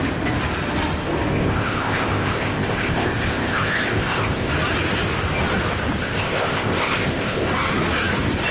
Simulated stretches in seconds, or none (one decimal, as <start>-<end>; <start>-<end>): 1.3-4.5; 6.0-7.5